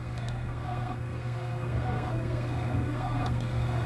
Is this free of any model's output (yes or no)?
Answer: no